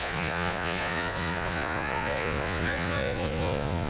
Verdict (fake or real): fake